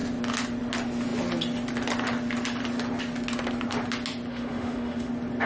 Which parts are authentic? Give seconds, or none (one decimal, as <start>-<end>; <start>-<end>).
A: 0.0-4.3; 5.1-5.5